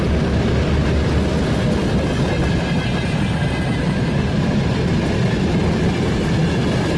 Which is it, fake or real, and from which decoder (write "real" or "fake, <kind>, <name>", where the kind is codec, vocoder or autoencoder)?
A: real